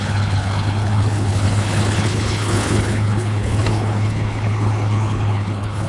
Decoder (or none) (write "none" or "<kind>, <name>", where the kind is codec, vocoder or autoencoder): codec, HILCodec